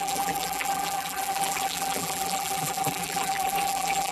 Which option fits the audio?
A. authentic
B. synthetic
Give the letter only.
B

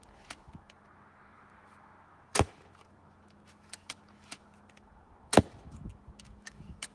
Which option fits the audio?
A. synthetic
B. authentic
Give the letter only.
A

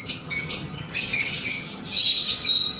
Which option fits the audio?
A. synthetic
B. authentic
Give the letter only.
A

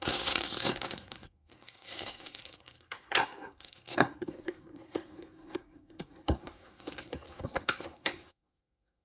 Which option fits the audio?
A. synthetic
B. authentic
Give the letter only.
A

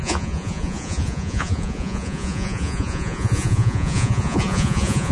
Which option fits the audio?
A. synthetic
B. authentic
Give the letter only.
A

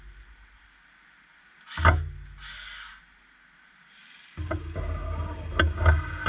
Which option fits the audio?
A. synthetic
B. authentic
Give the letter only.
B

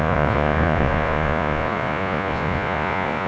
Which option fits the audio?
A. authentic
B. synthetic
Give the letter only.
B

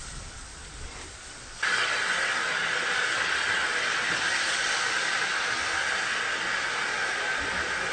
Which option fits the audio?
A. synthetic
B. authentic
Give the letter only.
B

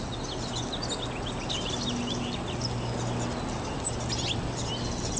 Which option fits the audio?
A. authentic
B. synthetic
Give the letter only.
A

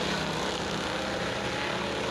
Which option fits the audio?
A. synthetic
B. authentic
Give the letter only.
B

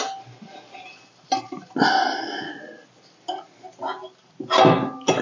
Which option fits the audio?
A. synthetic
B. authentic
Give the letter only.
B